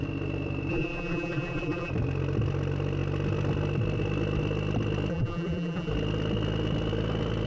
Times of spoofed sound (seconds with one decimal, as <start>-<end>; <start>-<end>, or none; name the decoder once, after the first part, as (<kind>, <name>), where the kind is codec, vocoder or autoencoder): 0.7-1.9 (vocoder, BigVGAN v2); 5.1-5.9